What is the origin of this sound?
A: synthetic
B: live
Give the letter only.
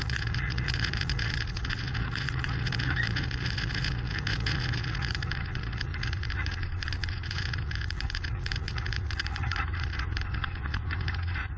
A